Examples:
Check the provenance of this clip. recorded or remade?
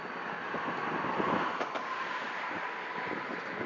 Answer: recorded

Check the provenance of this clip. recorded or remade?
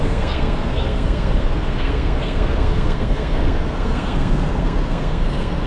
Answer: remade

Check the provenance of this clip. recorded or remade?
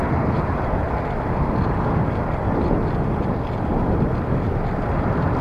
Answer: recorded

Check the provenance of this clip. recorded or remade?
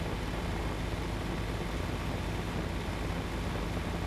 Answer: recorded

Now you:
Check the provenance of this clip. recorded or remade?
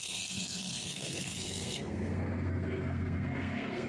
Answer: remade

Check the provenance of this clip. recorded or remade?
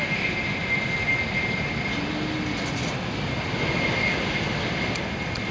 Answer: recorded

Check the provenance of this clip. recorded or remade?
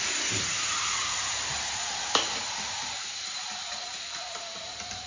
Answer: recorded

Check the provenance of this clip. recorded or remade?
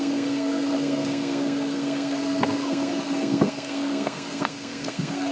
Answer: remade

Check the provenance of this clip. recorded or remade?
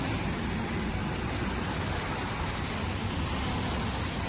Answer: recorded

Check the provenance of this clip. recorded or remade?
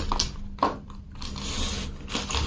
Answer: recorded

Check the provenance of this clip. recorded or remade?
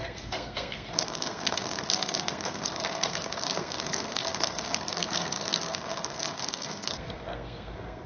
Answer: remade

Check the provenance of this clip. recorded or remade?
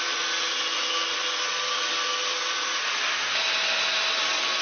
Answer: recorded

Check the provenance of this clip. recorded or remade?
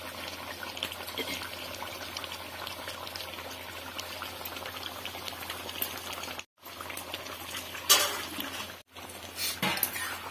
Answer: recorded